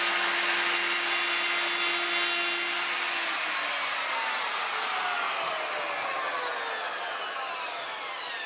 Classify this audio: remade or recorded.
recorded